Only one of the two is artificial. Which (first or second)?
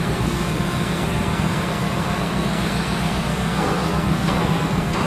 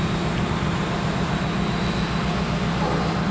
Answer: first